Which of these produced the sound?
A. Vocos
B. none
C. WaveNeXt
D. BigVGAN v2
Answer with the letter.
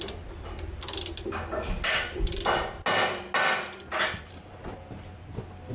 B